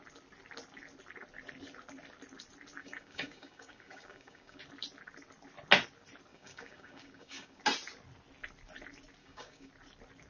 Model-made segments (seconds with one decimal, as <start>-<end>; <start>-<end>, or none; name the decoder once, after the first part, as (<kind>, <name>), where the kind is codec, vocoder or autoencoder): 2.8-4.6 (codec, DAC); 6.3-7.6; 9.2-9.7